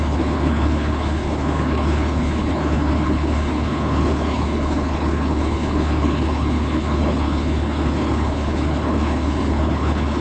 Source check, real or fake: fake